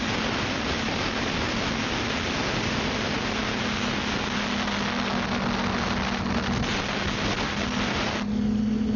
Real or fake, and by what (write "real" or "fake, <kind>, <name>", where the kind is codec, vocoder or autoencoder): real